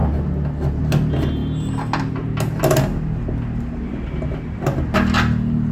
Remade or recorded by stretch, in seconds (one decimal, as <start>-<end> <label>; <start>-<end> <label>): 0.0-5.7 recorded